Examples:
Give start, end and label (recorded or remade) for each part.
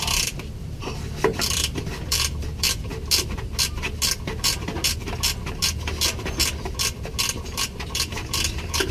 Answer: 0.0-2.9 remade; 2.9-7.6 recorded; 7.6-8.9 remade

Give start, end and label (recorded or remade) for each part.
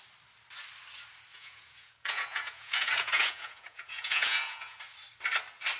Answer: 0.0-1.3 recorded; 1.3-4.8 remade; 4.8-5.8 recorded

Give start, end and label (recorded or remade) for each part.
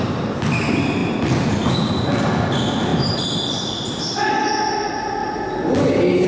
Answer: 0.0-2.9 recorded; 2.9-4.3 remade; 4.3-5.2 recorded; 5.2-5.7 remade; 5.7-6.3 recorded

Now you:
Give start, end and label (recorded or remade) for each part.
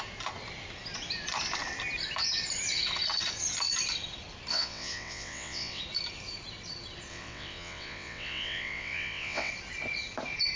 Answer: 0.0-4.5 recorded; 4.5-5.8 remade; 5.8-7.1 recorded; 7.1-9.5 remade; 9.5-10.6 recorded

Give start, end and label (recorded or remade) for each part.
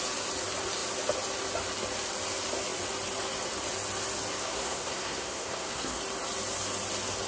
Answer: 0.0-4.4 recorded; 4.4-6.0 remade; 6.0-7.3 recorded